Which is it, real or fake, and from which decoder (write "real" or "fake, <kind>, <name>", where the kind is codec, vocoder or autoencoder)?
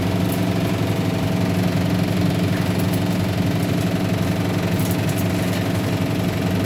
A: real